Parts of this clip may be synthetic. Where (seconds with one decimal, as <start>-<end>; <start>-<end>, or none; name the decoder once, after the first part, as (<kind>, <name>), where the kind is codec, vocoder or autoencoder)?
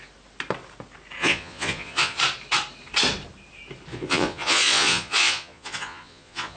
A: 1.2-2.2 (vocoder, Vocos); 3.9-6.6